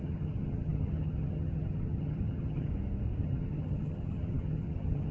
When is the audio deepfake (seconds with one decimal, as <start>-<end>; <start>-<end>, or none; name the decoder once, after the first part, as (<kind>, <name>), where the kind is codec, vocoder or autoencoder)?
0.0-2.7 (vocoder, HiFi-GAN); 3.2-5.1